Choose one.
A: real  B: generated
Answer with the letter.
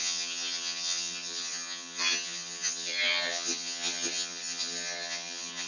B